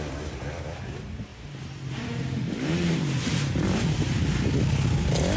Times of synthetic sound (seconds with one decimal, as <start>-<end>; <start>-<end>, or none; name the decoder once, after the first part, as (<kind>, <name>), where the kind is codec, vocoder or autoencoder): 1.3-4.5 (vocoder, BigVGAN v2)